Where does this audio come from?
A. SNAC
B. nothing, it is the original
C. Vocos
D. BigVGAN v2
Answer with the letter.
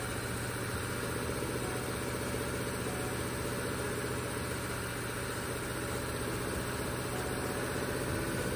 B